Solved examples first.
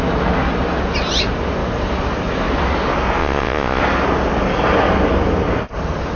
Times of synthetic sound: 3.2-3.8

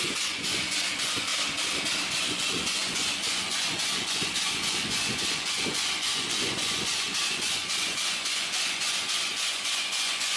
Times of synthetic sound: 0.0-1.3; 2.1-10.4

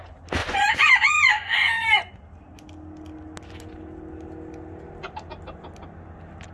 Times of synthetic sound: 0.4-2.1